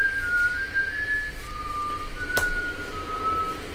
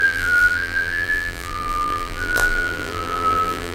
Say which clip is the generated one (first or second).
second